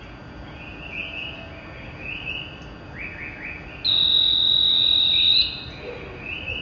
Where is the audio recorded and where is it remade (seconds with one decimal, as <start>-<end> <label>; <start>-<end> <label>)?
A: 0.0-6.6 recorded